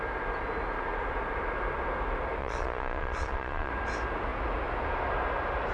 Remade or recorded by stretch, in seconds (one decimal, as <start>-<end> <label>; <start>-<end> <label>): 0.0-2.4 recorded; 2.4-3.7 remade; 3.7-5.7 recorded